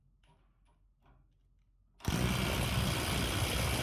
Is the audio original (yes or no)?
yes